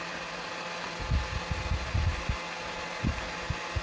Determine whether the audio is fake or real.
real